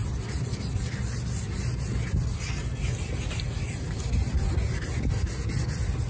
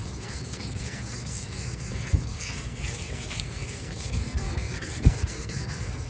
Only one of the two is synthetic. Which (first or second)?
second